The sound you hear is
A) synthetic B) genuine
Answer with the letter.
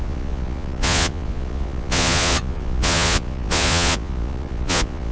A